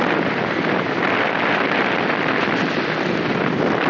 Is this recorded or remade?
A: recorded